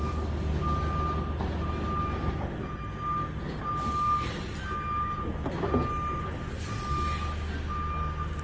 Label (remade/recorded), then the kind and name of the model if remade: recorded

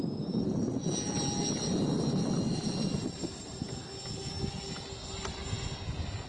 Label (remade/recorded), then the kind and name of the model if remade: recorded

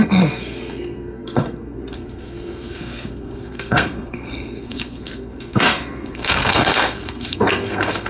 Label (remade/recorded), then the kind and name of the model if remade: remade, codec, SNAC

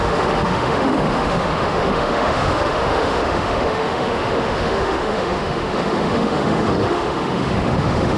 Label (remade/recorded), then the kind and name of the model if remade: remade, autoencoder, DAC-VAE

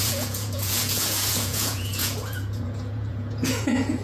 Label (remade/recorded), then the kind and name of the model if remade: remade, vocoder, Vocos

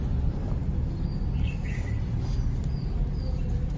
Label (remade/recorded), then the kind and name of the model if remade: recorded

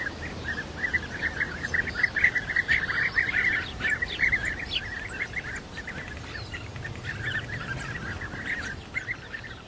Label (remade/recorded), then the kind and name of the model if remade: recorded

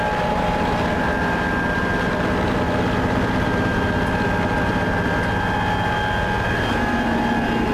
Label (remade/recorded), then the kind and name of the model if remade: recorded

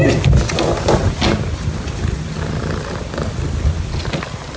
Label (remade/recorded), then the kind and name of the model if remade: recorded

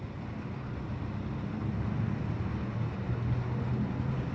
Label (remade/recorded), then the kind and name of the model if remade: recorded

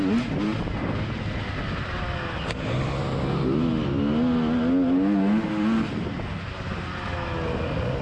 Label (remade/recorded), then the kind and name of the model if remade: recorded